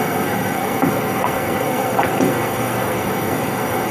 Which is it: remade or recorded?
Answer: remade